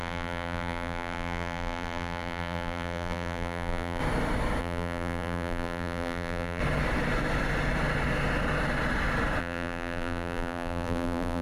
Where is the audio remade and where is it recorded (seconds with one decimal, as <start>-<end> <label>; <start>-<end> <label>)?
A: 0.0-4.0 remade; 4.0-4.6 recorded; 4.6-6.6 remade; 6.6-9.4 recorded; 9.4-11.4 remade